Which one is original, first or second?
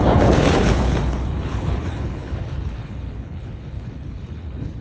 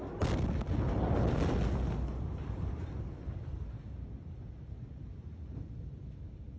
second